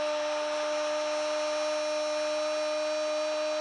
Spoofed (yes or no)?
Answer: no